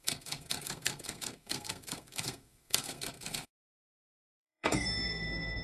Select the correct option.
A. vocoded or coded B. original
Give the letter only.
A